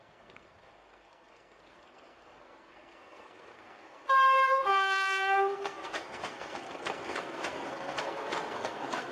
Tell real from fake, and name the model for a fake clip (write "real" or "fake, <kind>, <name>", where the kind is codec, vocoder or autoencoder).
fake, codec, SNAC